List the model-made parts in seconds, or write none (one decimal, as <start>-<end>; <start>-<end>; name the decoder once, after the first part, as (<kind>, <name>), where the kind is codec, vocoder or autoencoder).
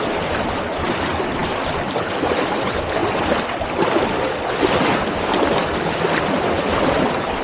none